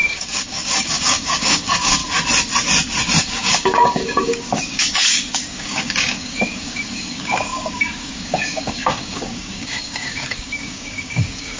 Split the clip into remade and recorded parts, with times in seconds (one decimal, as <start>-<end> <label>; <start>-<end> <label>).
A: 0.0-2.0 remade; 2.0-3.2 recorded; 3.2-11.6 remade